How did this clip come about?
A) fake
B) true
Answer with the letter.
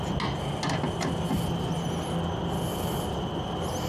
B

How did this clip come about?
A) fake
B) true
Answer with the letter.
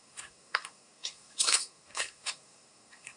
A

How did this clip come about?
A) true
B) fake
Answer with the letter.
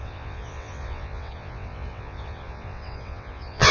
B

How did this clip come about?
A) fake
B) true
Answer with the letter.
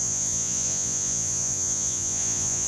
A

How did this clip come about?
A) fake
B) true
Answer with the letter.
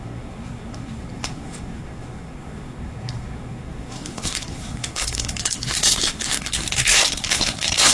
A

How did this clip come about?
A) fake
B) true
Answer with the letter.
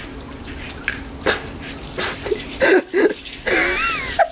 B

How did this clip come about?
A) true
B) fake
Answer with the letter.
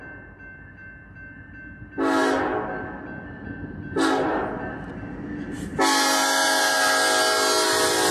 A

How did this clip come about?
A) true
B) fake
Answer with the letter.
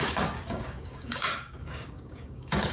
B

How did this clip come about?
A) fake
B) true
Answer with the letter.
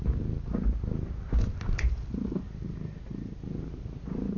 B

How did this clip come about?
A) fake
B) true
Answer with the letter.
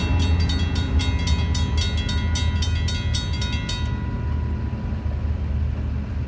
B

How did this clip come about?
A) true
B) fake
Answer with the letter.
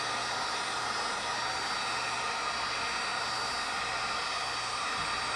A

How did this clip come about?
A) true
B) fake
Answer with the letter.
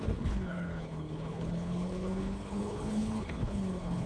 B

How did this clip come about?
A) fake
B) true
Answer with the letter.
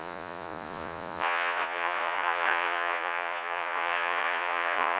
A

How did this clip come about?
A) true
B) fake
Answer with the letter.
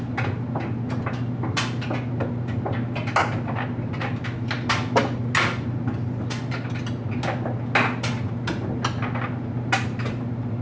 A